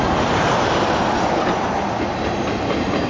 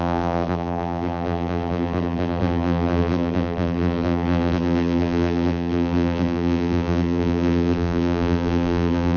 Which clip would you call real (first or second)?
first